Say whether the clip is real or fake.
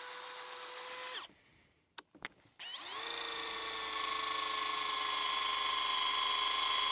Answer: real